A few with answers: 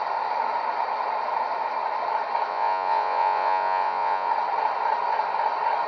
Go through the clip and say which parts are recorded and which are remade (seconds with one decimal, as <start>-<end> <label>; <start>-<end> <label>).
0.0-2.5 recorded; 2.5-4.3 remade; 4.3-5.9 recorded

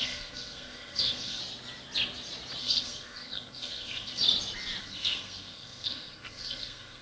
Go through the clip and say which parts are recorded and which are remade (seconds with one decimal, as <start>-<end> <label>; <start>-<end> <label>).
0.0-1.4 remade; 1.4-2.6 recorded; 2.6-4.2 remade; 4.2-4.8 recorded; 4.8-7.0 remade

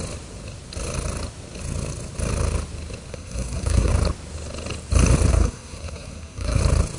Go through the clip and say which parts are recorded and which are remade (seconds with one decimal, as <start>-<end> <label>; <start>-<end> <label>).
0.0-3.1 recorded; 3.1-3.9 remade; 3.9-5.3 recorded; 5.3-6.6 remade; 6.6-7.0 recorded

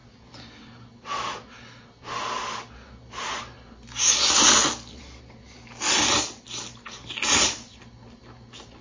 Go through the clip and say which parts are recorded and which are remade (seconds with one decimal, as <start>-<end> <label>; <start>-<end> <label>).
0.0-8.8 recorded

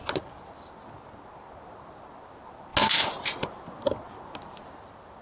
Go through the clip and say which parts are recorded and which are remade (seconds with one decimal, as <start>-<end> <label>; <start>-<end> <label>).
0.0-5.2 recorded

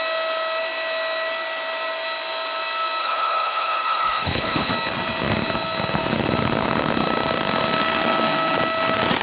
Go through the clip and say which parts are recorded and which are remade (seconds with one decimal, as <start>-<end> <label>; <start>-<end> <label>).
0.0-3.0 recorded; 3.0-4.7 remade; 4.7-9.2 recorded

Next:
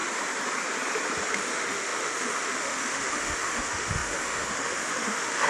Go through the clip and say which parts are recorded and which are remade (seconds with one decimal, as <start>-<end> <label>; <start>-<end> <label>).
0.0-1.3 recorded; 1.3-5.5 remade

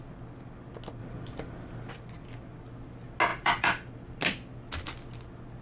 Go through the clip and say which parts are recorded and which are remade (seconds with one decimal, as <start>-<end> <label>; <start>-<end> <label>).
0.0-1.0 recorded; 1.0-1.9 remade; 1.9-3.3 recorded; 3.3-3.9 remade; 3.9-5.6 recorded